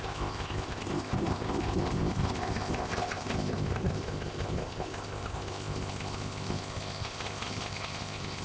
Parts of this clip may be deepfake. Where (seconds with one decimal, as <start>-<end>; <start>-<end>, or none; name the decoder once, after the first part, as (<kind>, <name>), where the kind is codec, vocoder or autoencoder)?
0.0-8.4 (codec, ZipCodec)